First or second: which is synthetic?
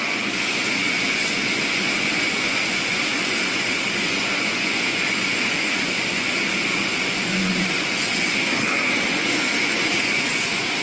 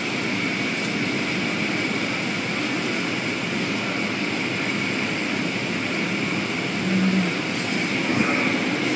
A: first